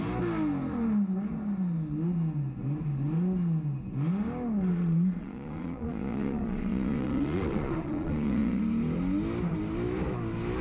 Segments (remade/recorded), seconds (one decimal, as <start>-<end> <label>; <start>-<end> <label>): 0.0-4.7 recorded; 4.7-8.6 remade; 8.6-10.6 recorded